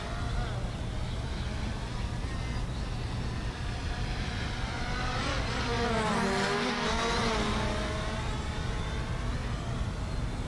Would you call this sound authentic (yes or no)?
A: yes